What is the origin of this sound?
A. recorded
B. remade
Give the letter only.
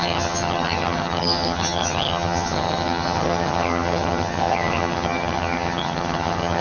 B